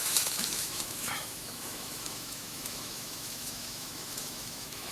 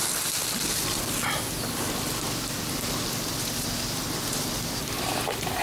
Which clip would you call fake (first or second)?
first